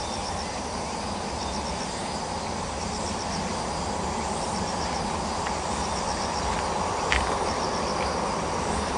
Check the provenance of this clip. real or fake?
real